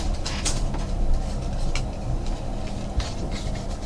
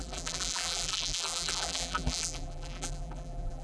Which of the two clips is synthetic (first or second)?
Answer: second